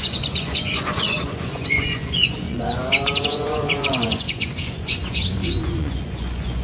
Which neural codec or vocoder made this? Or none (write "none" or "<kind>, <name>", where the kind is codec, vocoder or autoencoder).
vocoder, Vocos